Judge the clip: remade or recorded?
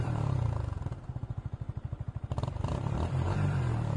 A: remade